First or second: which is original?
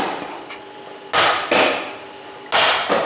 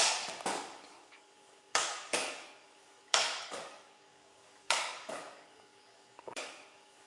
first